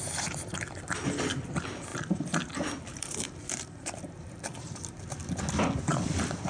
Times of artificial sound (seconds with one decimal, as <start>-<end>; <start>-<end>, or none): 1.9-5.0